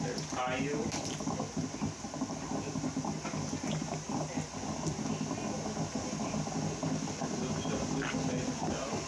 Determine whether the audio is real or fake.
real